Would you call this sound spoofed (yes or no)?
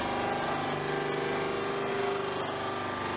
no